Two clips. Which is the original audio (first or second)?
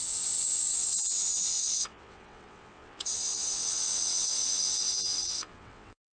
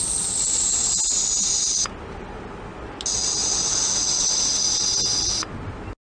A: second